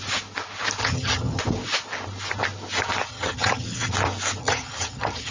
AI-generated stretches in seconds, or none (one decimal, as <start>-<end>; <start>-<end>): 0.8-1.4; 3.1-3.9; 4.4-5.3